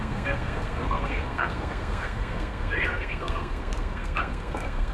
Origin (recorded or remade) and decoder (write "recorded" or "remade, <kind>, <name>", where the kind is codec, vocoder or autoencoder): remade, codec, SNAC